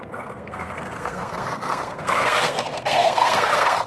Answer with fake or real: fake